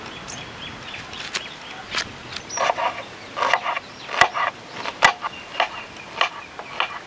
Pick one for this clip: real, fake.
real